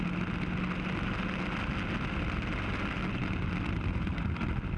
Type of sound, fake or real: real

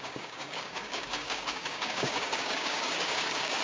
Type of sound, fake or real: fake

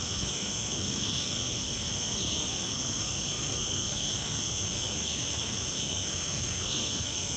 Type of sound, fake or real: fake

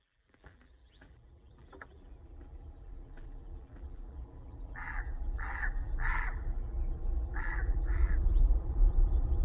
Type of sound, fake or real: fake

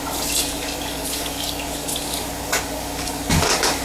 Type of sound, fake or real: fake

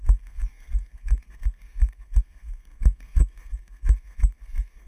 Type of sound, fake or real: fake